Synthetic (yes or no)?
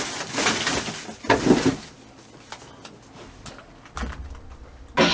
no